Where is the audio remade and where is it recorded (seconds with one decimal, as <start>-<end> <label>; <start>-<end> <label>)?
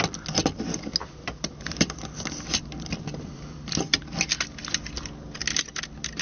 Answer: 0.0-1.0 recorded; 1.0-4.6 remade; 4.6-6.2 recorded